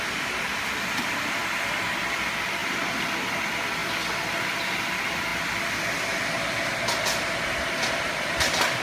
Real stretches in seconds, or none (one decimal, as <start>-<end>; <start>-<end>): 0.0-8.8